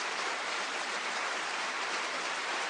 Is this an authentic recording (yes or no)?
no